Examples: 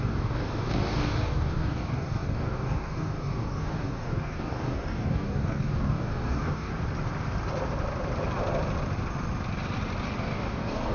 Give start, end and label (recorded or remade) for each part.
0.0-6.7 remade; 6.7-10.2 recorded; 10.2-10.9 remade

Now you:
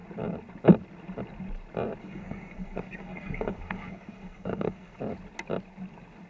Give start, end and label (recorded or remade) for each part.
0.0-2.0 recorded; 2.0-5.0 remade; 5.0-6.3 recorded

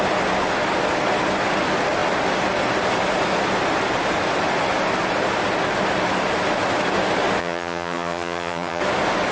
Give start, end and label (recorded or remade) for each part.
0.0-7.4 recorded; 7.4-8.8 remade; 8.8-9.3 recorded

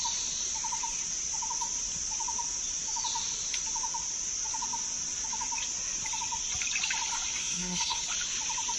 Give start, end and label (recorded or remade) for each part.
0.0-7.4 recorded; 7.4-8.0 remade; 8.0-8.8 recorded